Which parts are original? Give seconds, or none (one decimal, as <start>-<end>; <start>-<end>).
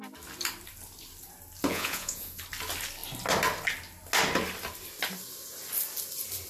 0.0-1.7; 2.4-6.5